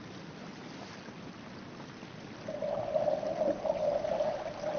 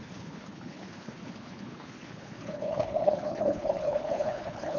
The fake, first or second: second